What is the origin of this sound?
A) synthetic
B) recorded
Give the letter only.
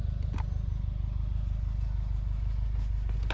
B